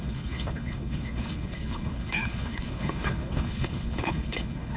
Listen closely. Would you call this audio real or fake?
fake